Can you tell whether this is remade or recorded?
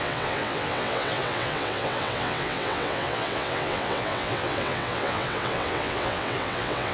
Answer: remade